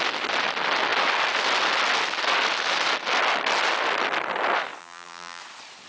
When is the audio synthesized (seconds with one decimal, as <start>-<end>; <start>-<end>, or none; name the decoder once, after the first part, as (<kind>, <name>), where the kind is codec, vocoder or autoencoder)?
4.8-5.4 (vocoder, BigVGAN v2)